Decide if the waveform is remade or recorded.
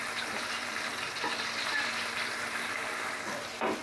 recorded